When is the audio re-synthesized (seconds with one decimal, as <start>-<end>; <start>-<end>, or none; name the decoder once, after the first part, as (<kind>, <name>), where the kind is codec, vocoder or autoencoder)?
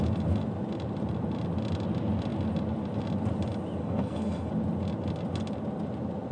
3.8-4.5 (codec, SNAC)